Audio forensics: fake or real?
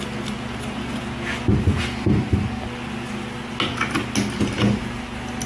real